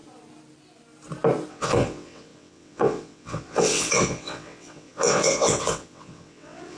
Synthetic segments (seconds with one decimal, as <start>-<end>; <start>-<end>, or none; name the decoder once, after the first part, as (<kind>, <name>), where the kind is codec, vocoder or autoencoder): 1.5-6.8 (vocoder, WaveNeXt)

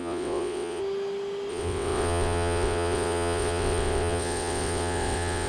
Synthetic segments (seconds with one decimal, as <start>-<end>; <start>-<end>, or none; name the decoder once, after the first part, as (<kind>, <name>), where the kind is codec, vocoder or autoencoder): 0.0-0.8 (vocoder, WaveNeXt); 1.5-5.5

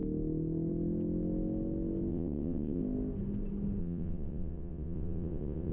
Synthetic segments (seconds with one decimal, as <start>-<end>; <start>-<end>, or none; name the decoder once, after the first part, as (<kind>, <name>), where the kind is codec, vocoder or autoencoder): 2.1-2.8 (vocoder, WaveNeXt); 3.8-5.7

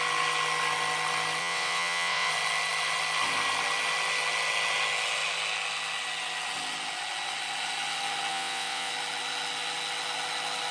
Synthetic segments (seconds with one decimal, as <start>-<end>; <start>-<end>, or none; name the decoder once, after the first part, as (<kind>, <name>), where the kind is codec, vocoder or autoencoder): 1.4-2.3 (vocoder, WaveNeXt); 8.3-8.9

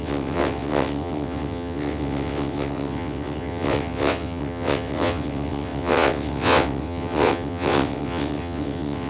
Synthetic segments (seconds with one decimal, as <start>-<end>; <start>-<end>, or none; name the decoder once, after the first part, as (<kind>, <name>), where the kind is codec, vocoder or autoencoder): 0.0-9.1 (vocoder, WaveNeXt)

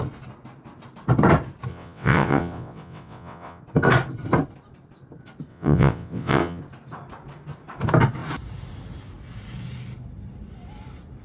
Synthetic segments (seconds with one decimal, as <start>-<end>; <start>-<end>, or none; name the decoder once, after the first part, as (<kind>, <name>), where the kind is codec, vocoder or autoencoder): 1.7-3.6 (vocoder, WaveNeXt); 5.5-6.6